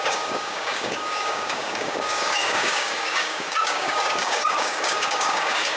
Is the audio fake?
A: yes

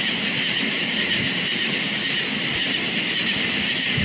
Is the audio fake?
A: no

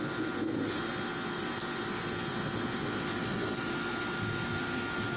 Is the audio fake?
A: no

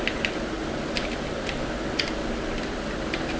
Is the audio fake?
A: no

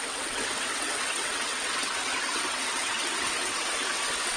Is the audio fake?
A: yes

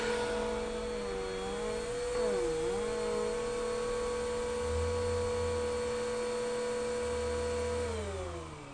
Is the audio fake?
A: no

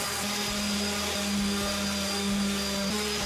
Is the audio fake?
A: no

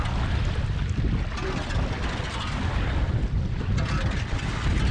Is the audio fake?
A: no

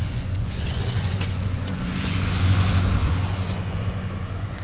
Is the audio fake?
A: yes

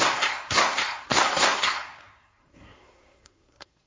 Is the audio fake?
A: yes